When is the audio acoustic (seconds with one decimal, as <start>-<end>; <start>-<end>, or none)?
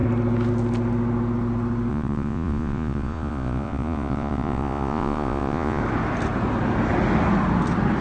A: 0.0-1.9; 5.8-8.0